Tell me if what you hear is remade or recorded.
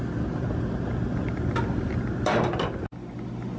recorded